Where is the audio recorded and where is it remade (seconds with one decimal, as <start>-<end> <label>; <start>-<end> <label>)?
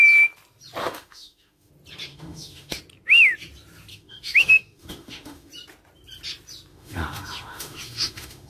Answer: 0.0-0.8 recorded; 0.8-1.7 remade; 1.7-2.1 recorded; 2.1-2.8 remade; 2.8-3.9 recorded; 3.9-5.5 remade; 5.5-6.7 recorded; 6.7-8.5 remade